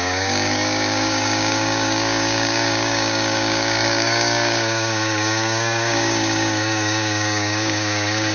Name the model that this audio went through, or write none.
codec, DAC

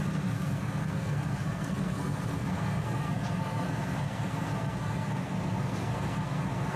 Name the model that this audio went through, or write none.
codec, SNAC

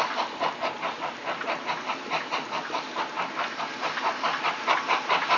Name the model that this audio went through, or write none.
none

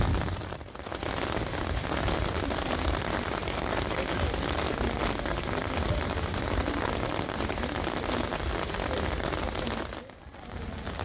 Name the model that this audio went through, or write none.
none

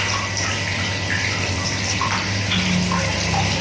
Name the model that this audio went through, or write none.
none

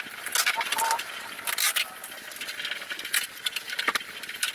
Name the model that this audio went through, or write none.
none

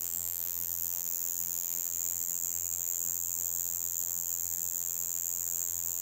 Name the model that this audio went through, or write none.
vocoder, BigVGAN v2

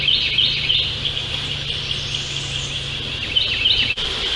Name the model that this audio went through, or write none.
none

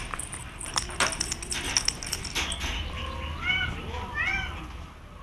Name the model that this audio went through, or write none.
none